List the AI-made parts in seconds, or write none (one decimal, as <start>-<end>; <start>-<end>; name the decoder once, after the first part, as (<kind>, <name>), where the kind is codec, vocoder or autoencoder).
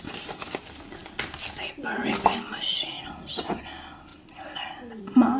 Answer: none